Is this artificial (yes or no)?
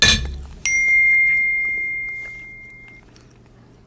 no